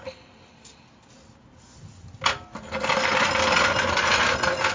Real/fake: real